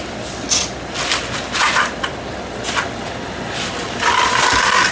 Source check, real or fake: real